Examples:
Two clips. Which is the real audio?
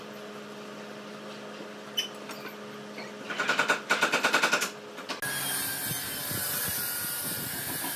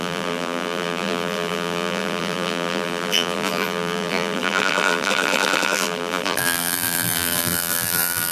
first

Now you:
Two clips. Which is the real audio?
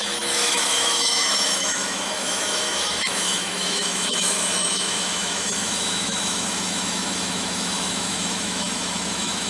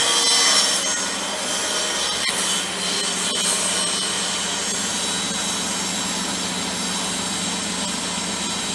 second